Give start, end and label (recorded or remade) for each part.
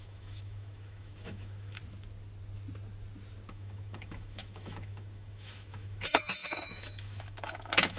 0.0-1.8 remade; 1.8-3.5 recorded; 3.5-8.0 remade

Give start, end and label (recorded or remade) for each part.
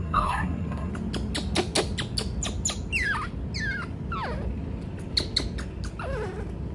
0.0-0.9 remade; 0.9-6.7 recorded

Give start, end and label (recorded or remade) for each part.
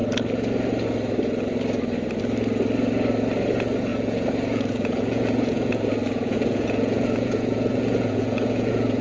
0.0-3.9 recorded; 3.9-9.0 remade